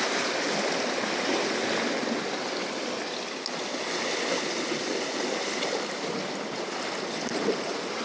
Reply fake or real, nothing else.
real